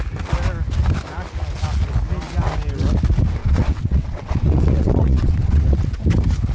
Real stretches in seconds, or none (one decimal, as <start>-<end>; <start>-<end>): 0.0-3.4; 6.0-6.5

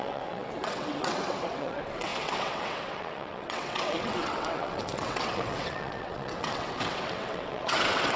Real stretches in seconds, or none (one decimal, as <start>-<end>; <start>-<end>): none

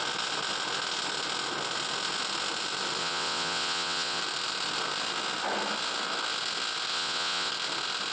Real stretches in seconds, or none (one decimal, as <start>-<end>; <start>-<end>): 0.0-3.0; 4.2-6.9; 7.5-8.1

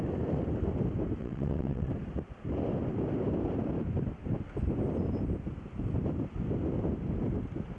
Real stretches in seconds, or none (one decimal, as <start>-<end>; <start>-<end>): 0.0-1.2; 1.9-7.8

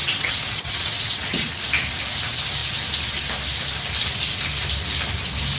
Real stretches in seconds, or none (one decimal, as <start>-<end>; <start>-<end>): 1.5-5.6

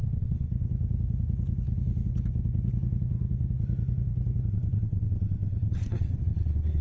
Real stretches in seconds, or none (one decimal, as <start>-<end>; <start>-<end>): 0.5-4.5

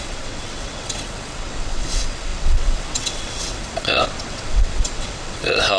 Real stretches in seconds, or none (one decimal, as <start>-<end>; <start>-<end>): none